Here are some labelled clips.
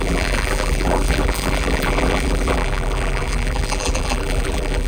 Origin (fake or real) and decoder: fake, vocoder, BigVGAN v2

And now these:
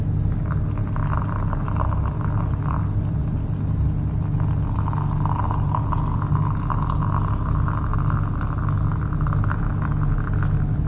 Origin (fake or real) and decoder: real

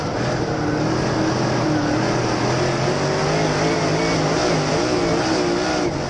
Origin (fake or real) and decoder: real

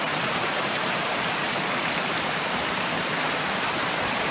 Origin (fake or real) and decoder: fake, vocoder, BigVGAN v2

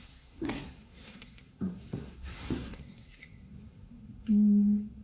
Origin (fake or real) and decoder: fake, codec, SNAC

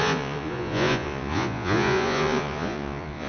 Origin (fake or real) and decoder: fake, vocoder, Vocos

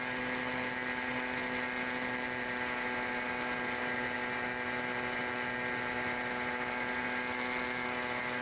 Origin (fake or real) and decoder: real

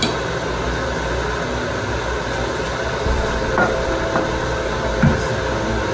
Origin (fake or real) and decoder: real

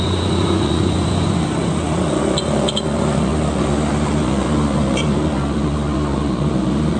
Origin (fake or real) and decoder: fake, vocoder, Vocos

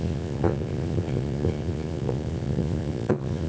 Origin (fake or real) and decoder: fake, vocoder, Vocos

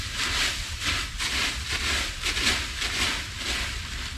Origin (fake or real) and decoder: real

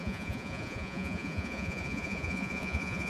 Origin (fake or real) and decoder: fake, vocoder, Vocos